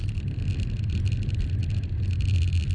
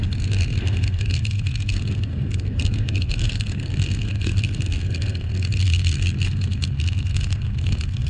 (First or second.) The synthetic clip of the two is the second